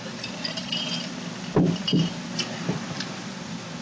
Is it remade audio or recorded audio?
remade